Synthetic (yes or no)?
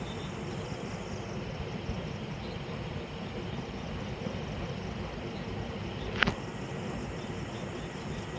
no